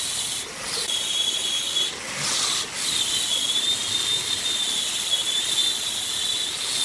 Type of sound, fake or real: real